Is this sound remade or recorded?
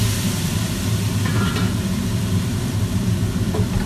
remade